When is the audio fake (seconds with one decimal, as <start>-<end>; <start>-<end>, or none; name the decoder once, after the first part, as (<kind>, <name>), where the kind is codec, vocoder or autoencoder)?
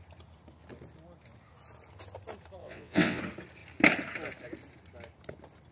2.6-3.2 (vocoder, WaveNeXt)